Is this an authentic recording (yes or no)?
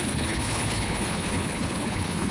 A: no